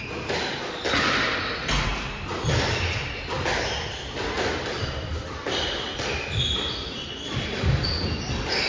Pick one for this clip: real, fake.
real